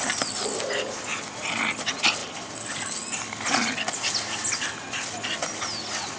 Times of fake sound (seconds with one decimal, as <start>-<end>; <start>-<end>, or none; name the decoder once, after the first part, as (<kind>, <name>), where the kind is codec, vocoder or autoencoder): none